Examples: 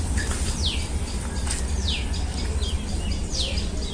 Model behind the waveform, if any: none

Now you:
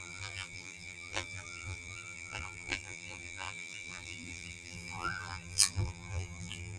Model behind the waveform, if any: vocoder, BigVGAN v2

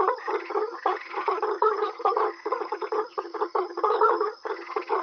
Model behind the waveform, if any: vocoder, HiFi-GAN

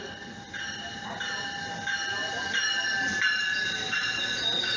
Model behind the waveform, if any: none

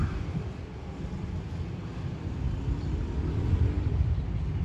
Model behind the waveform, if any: none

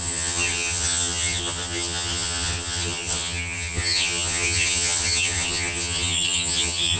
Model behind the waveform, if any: vocoder, HiFi-GAN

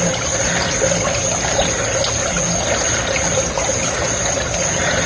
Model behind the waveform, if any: none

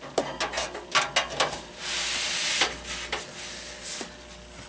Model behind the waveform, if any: none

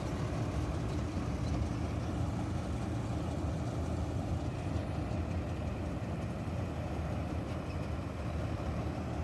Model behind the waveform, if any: none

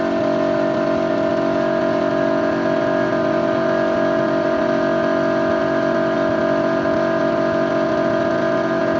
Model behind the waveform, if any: none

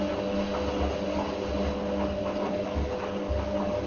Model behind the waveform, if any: none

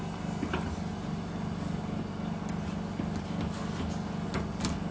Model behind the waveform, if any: none